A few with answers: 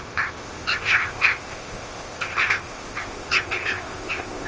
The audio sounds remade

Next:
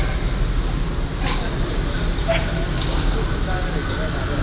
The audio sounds recorded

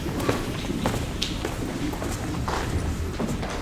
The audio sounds remade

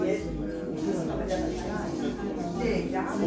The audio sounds recorded